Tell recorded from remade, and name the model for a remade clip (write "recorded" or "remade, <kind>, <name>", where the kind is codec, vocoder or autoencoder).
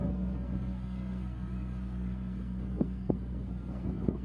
remade, codec, SNAC